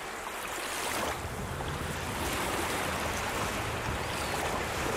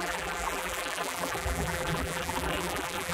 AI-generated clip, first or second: second